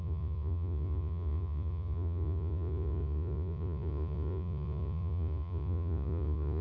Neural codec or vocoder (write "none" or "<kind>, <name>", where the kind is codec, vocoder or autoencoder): vocoder, Vocos